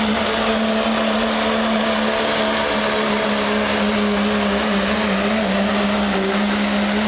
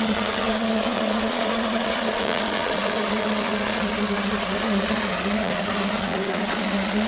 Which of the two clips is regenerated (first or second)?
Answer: second